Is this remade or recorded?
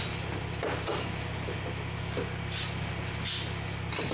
recorded